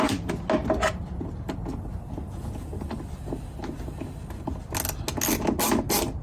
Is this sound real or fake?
real